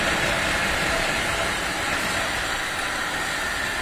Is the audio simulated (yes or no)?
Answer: yes